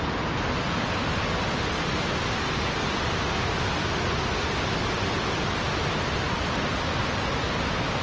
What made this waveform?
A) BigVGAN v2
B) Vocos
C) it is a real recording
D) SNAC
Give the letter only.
C